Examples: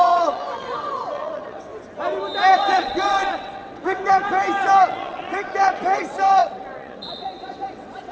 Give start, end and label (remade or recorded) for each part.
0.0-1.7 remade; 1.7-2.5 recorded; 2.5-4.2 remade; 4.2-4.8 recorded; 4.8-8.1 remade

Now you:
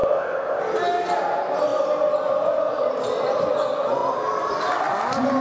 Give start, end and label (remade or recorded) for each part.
0.0-0.6 remade; 0.6-5.4 recorded